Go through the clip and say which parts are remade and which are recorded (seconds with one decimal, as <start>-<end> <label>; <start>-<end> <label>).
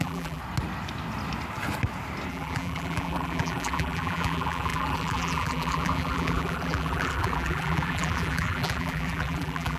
0.0-0.4 remade; 0.4-2.3 recorded; 2.3-9.8 remade